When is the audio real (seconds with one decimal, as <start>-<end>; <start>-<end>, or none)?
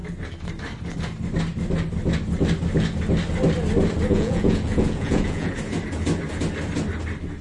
0.0-4.1; 5.5-7.4